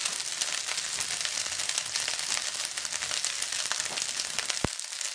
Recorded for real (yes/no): yes